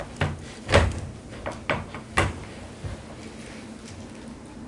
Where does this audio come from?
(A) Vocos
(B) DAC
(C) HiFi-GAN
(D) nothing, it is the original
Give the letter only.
D